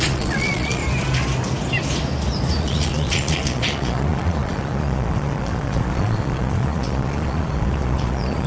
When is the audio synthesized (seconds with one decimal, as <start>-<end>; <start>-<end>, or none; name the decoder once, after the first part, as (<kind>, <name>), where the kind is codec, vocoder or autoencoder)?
0.0-0.8 (vocoder, Vocos); 2.6-8.5